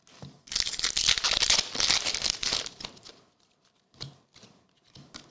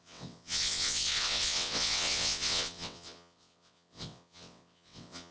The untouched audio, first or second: first